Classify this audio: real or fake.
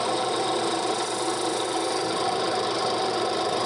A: fake